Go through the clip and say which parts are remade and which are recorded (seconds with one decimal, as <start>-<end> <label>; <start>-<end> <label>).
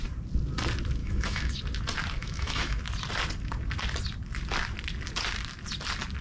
0.0-1.0 recorded; 1.0-1.6 remade; 1.6-2.2 recorded; 2.2-2.8 remade; 2.8-6.2 recorded